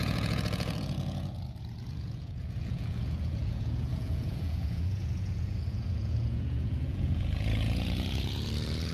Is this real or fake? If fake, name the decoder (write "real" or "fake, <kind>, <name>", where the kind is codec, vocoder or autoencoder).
fake, vocoder, Vocos